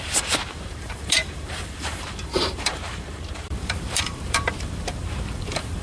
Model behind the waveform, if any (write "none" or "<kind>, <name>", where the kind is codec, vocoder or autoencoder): vocoder, BigVGAN v2